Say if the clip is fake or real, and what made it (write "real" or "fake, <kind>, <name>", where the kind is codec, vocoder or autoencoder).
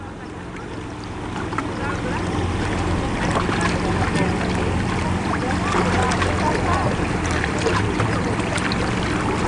real